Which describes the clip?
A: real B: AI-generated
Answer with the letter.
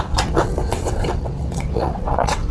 B